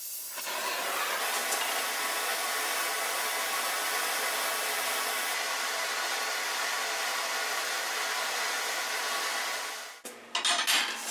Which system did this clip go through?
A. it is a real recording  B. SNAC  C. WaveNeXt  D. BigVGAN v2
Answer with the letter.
A